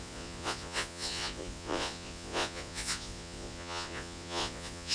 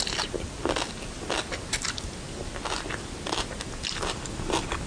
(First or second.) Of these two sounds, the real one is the second